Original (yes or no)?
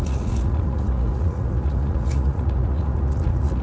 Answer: no